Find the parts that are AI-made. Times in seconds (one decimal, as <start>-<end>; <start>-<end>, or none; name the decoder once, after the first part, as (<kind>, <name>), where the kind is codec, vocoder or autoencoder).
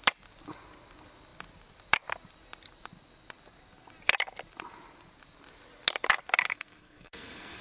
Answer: 6.5-7.6 (codec, SNAC)